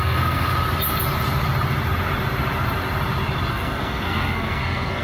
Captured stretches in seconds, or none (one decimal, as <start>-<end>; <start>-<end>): 0.5-3.5

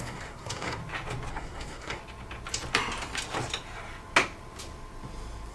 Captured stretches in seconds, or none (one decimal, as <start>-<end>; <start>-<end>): 0.8-1.3; 2.0-5.5

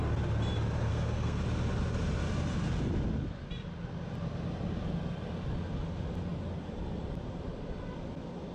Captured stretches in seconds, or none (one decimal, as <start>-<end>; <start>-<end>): 0.0-0.9; 1.4-8.5